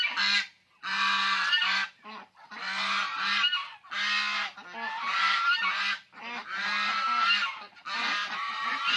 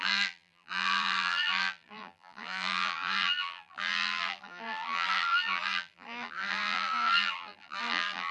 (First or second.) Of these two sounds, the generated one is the second